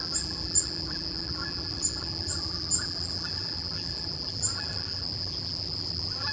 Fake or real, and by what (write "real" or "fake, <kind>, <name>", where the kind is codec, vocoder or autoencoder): fake, vocoder, BigVGAN v2